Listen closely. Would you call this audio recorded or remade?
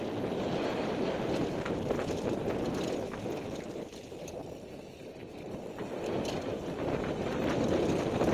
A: recorded